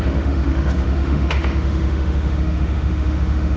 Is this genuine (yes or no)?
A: no